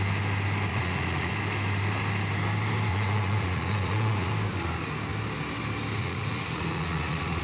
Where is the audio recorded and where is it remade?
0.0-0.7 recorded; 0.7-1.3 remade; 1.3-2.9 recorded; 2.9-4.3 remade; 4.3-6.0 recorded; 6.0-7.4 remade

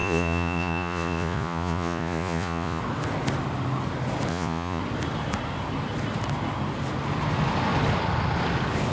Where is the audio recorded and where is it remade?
0.0-2.8 remade; 2.8-4.3 recorded; 4.3-4.8 remade; 4.8-8.9 recorded